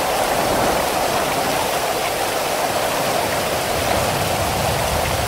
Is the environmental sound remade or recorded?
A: recorded